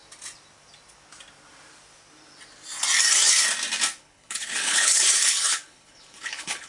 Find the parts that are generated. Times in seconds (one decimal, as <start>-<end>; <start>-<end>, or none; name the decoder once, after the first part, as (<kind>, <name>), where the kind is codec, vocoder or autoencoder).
4.0-6.7 (codec, HILCodec)